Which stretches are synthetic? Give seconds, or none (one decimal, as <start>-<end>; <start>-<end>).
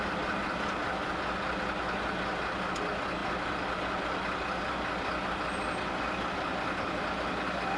none